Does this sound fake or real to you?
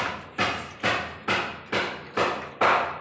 real